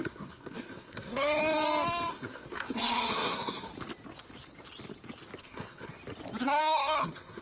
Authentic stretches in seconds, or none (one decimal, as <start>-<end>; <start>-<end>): 1.4-2.1; 3.7-5.4; 6.0-6.6